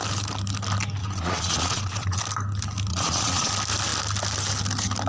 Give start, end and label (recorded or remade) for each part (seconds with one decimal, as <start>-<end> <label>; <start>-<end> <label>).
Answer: 0.0-1.0 recorded; 1.0-2.2 remade; 2.2-2.9 recorded; 2.9-3.5 remade; 3.5-5.1 recorded